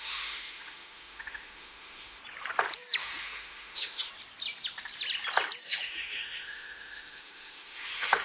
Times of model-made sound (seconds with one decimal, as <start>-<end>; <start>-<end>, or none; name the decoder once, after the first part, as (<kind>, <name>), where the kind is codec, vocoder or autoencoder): 0.0-2.2 (autoencoder, DAC-VAE); 3.0-4.1; 5.6-8.2